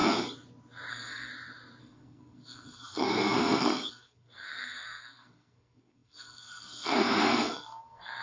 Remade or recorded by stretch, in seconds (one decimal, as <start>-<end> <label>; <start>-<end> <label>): 0.0-0.9 recorded; 0.9-1.3 remade; 1.3-1.8 recorded; 1.8-8.2 remade